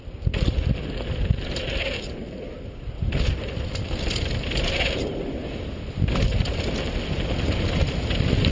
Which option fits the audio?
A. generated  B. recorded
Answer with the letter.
B